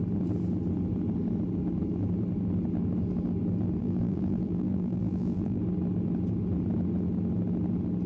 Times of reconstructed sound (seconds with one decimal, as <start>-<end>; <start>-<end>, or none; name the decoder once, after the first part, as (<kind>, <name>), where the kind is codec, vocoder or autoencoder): 3.8-5.6 (vocoder, BigVGAN v2)